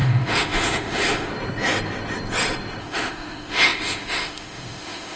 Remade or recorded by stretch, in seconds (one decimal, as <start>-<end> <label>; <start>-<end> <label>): 0.0-1.3 remade; 1.3-2.8 recorded; 2.8-5.2 remade